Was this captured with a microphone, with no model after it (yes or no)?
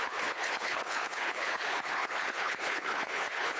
no